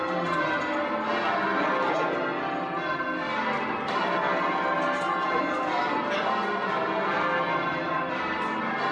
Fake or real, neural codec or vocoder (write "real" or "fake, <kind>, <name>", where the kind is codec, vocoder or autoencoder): real